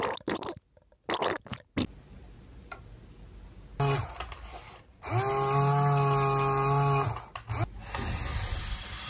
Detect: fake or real real